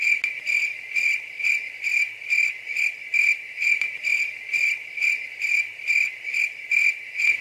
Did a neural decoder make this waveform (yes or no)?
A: no